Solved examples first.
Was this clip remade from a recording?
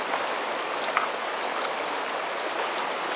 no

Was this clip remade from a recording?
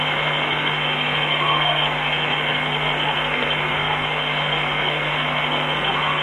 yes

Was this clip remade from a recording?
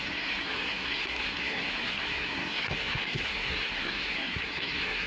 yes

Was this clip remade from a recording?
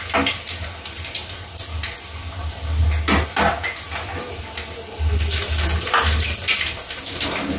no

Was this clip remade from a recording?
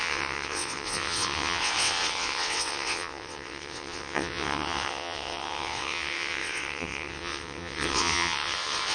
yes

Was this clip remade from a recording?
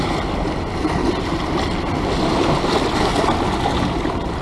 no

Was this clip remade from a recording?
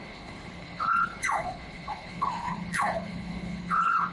yes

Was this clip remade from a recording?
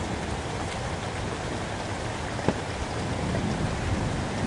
no